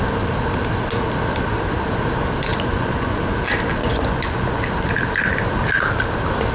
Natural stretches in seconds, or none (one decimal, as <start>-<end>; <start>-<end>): 0.0-2.5; 3.2-3.8; 4.6-6.5